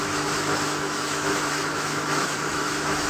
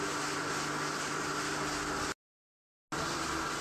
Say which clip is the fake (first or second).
first